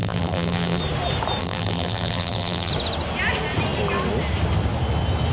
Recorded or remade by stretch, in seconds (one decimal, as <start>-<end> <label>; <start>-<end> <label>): 0.0-0.8 remade; 0.8-1.4 recorded; 1.4-2.7 remade; 2.7-5.3 recorded